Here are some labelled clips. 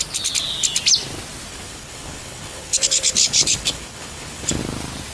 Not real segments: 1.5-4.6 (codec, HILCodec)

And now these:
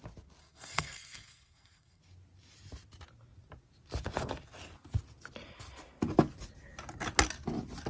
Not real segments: 0.4-2.0 (codec, SNAC)

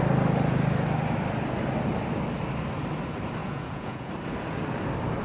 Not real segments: 3.4-4.1 (vocoder, Vocos)

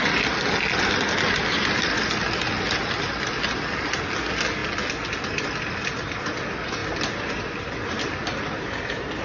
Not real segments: none

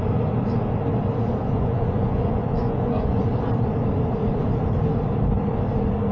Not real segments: 1.4-3.2 (vocoder, Vocos)

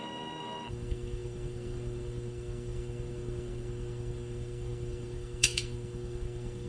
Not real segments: 0.0-6.7 (codec, SNAC)